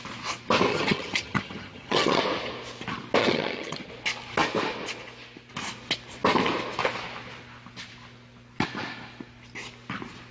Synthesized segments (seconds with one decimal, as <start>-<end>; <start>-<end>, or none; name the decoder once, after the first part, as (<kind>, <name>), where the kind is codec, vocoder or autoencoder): 0.7-2.2 (vocoder, HiFi-GAN); 3.2-3.9